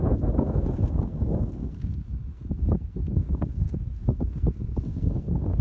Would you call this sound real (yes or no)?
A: no